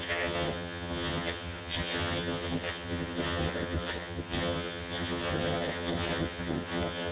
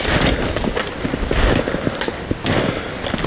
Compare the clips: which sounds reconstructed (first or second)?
first